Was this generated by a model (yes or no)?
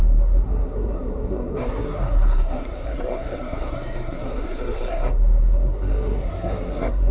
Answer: yes